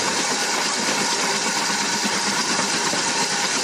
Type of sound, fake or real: real